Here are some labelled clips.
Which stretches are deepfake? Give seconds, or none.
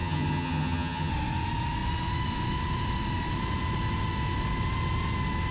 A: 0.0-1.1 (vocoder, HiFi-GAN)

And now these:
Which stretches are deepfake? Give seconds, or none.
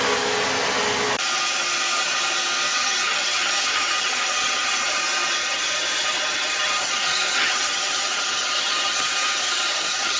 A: 2.7-5.0 (vocoder, HiFi-GAN); 5.4-10.2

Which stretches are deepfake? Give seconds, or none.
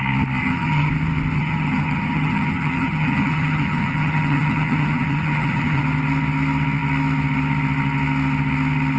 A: 0.4-0.9 (vocoder, HiFi-GAN); 1.4-5.8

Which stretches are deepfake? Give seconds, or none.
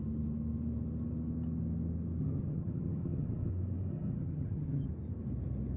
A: 2.2-3.5 (vocoder, HiFi-GAN); 3.9-4.9